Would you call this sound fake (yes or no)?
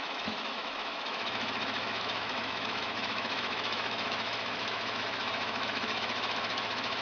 yes